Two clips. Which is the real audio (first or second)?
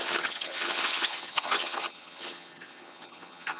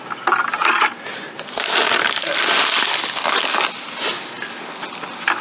second